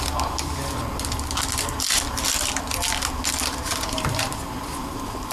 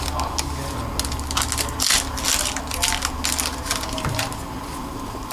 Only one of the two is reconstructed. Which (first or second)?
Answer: first